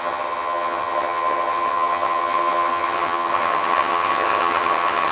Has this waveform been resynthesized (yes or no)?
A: yes